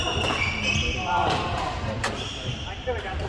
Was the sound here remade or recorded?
recorded